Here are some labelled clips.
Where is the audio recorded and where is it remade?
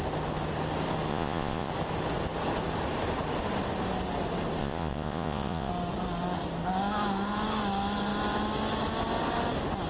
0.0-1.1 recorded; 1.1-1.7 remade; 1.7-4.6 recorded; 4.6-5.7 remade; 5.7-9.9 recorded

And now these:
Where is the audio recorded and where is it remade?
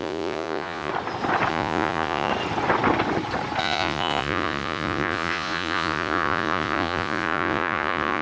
0.0-0.9 remade; 0.9-1.5 recorded; 1.5-2.3 remade; 2.3-3.6 recorded; 3.6-8.2 remade